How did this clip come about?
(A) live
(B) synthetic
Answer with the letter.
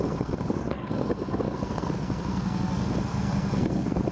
B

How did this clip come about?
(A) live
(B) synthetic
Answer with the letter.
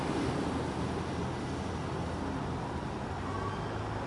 A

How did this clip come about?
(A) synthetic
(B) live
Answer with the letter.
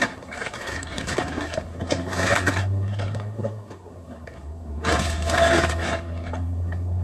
A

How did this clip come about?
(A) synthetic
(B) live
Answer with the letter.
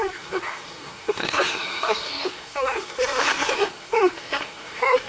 A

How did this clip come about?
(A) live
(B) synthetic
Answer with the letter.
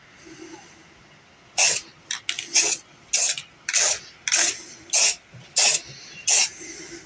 A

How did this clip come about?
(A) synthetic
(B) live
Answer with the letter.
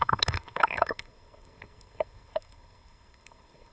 A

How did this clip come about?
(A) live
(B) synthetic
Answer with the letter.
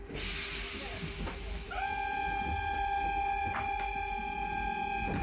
A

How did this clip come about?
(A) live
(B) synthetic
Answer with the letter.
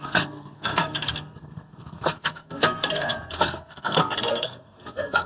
B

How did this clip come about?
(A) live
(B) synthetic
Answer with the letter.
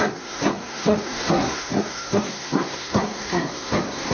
B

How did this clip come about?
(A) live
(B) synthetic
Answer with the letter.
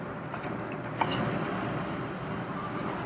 A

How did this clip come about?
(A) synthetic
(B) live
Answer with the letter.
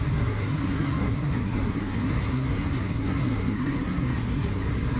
A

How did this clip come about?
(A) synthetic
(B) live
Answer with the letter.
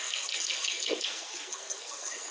A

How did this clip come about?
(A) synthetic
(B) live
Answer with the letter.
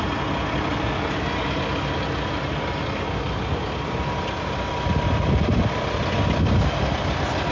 B